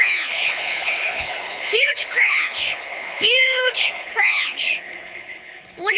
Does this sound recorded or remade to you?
remade